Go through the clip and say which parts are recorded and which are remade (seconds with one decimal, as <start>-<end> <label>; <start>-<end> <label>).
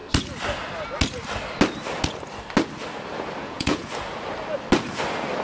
0.0-3.4 recorded; 3.4-3.9 remade; 3.9-5.4 recorded